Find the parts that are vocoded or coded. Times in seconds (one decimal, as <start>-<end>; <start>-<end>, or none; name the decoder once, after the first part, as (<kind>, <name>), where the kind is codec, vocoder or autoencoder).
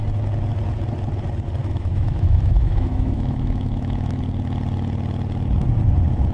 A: 1.6-4.2 (autoencoder, DAC-VAE)